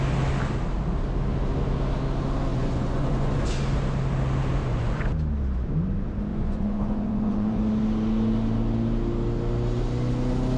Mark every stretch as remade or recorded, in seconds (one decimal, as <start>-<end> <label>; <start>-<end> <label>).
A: 0.0-2.5 recorded; 2.5-3.4 remade; 3.4-4.6 recorded; 4.6-5.1 remade; 5.1-6.3 recorded; 6.3-7.6 remade; 7.6-10.6 recorded